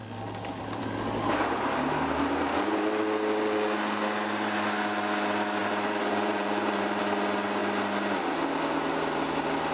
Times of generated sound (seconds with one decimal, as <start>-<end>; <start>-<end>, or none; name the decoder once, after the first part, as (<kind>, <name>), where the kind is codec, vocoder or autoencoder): 5.6-7.0 (vocoder, BigVGAN v2)

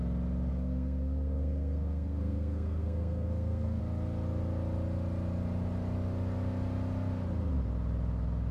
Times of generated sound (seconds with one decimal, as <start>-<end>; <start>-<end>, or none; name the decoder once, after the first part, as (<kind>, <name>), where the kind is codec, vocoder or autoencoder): 0.5-3.8 (codec, SNAC)

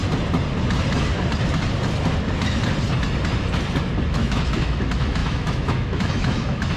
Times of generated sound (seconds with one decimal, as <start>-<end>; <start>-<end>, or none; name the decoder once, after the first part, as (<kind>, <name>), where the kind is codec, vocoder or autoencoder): 4.1-6.8 (autoencoder, DAC-VAE)

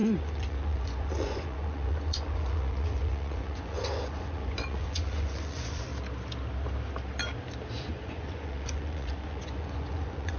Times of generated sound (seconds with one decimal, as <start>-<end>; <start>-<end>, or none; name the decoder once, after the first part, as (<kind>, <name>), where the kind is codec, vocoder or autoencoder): 0.0-5.9 (vocoder, Vocos); 7.8-10.4

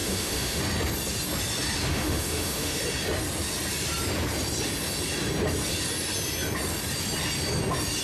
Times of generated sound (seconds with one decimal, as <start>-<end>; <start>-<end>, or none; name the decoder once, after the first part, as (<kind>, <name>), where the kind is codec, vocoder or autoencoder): 0.0-0.6 (autoencoder, DAC-VAE); 1.9-2.8

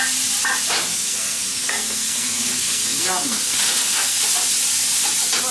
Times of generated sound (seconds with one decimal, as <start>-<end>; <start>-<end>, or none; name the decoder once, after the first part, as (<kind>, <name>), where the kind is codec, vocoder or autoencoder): 0.9-4.2 (codec, SNAC)

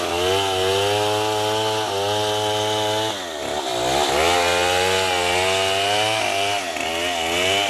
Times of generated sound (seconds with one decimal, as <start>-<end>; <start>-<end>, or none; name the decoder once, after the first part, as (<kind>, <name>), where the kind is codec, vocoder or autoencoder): none

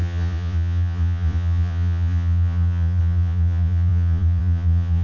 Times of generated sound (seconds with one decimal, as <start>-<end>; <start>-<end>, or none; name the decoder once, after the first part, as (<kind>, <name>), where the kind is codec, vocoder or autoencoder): 0.0-5.0 (vocoder, Vocos)